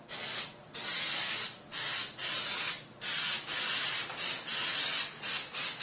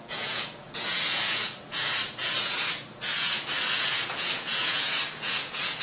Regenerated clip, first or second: second